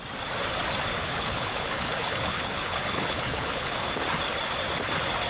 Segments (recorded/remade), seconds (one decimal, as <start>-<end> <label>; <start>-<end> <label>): 0.0-1.0 recorded; 1.0-3.9 remade; 3.9-5.3 recorded